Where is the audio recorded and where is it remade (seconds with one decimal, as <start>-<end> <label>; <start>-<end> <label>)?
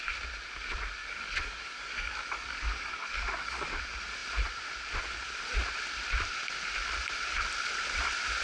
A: 0.0-1.0 recorded; 1.0-3.8 remade; 3.8-8.4 recorded